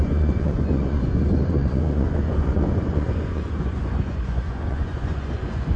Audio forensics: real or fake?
fake